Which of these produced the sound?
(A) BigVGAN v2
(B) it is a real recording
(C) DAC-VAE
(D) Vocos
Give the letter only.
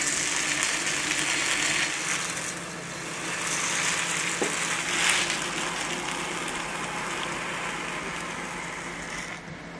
B